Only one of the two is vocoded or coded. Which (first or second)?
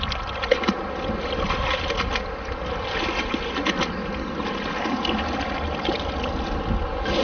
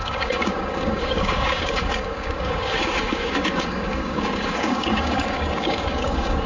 second